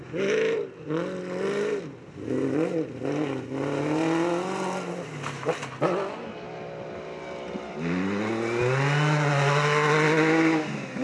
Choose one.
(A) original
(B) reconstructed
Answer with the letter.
A